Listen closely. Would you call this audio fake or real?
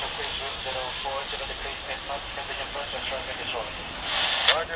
real